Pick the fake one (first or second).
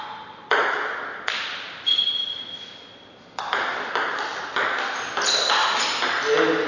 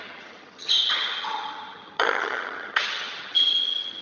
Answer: second